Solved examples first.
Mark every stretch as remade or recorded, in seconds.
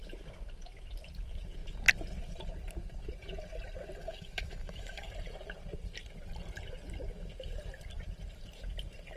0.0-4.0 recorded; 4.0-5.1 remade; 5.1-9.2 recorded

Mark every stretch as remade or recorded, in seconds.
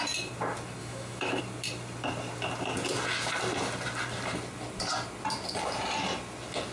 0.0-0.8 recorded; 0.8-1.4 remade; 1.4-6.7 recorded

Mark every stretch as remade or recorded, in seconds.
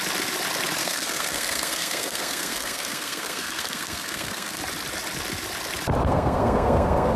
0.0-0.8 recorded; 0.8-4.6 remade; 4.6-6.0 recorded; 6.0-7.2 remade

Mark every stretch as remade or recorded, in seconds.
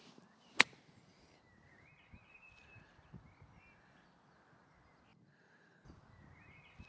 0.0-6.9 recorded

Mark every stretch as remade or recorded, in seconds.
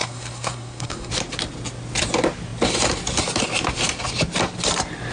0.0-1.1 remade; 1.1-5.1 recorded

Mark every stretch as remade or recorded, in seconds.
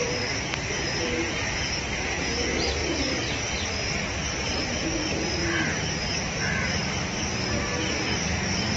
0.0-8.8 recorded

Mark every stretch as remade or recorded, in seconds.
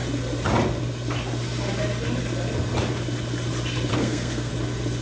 0.0-3.9 recorded; 3.9-4.5 remade; 4.5-5.0 recorded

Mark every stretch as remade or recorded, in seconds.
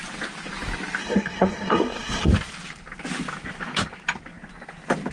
0.0-1.0 recorded; 1.0-2.3 remade; 2.3-5.1 recorded